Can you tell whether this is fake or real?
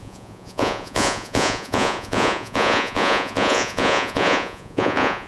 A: fake